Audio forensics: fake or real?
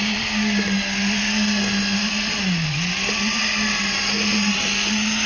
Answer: real